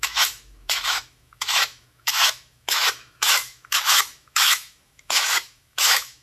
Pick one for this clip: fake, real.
fake